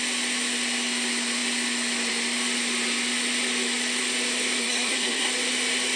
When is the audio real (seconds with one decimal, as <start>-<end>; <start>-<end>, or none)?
0.0-4.6; 5.3-6.0